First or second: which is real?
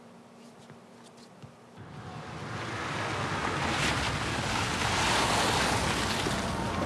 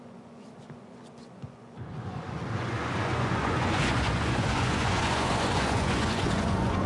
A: first